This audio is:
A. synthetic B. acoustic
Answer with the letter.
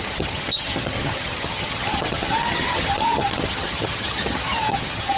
A